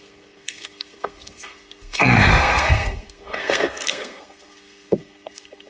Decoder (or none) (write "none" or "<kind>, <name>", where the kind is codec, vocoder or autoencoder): codec, SNAC